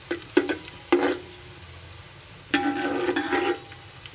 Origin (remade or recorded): recorded